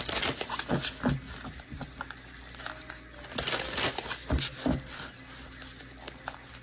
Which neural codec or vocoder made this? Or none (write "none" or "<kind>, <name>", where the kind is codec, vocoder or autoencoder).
none